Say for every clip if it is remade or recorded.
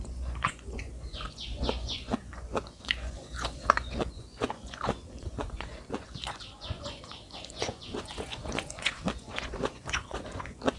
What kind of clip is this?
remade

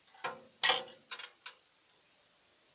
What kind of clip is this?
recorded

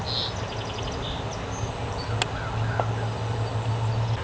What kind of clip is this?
recorded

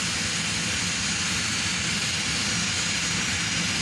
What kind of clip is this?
recorded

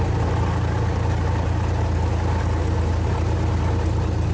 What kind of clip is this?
recorded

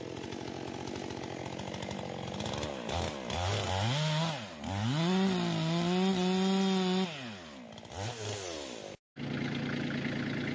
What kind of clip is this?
recorded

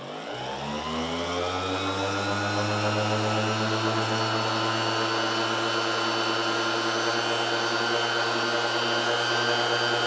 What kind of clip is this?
recorded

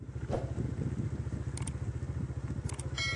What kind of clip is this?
recorded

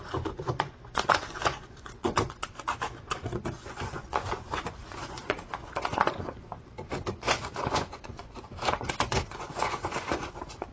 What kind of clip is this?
remade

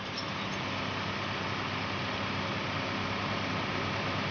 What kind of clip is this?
recorded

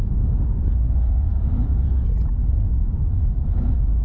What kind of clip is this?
remade